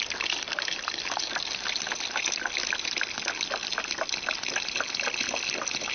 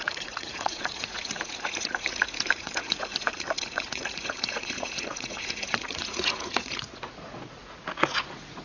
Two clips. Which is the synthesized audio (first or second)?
second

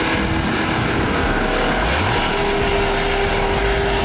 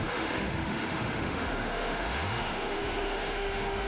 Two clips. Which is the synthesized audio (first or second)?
second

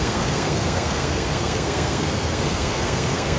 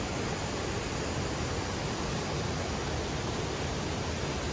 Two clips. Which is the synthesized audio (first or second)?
first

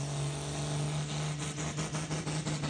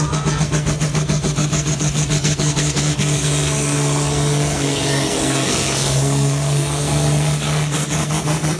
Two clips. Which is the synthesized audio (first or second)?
second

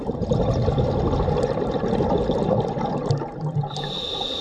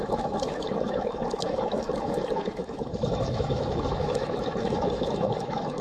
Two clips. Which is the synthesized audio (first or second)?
second